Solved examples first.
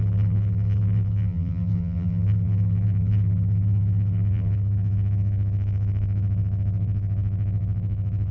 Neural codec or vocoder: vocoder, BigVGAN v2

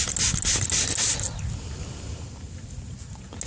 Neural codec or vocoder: none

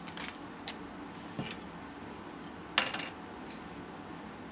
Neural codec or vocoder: none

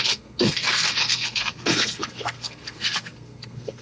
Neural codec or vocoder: codec, SNAC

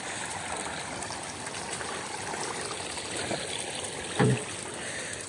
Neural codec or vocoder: none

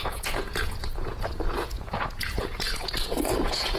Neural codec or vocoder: vocoder, Vocos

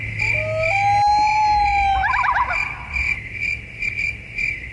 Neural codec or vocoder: none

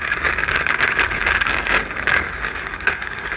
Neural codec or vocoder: codec, DAC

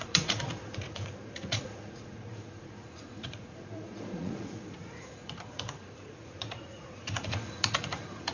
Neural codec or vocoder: vocoder, Vocos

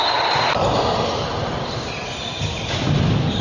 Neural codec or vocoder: vocoder, BigVGAN v2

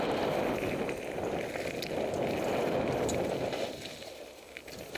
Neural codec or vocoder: none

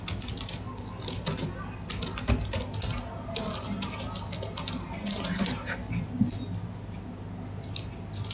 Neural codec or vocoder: none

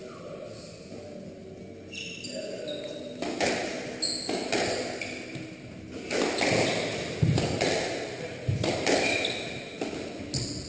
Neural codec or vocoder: none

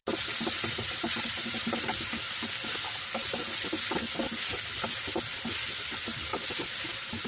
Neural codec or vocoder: none